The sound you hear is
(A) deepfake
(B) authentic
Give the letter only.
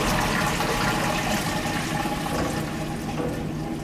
B